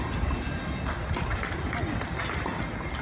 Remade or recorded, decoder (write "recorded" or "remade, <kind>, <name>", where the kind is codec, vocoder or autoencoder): recorded